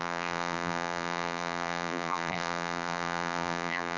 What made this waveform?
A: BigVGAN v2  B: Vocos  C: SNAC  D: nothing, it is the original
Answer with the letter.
A